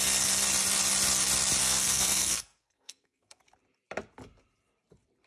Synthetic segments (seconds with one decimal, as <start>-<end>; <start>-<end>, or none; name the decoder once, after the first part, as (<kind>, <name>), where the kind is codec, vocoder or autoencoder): 1.6-3.4 (codec, SNAC)